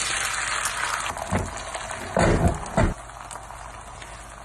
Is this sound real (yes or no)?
yes